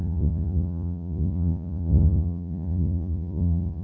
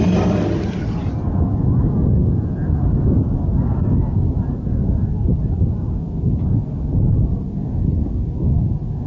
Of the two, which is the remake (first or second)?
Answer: first